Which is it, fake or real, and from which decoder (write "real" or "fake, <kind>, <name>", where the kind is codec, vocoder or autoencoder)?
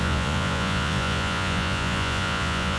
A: fake, vocoder, Vocos